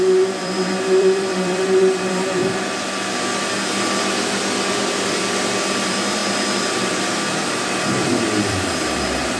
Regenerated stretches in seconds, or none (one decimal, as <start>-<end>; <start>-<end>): 0.0-2.4; 4.7-9.4